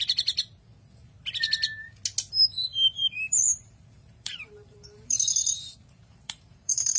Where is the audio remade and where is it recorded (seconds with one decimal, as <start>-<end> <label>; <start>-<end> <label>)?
0.0-2.7 recorded; 2.7-7.0 remade